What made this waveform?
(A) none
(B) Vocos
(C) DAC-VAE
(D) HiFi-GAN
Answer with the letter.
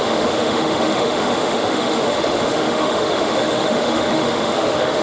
C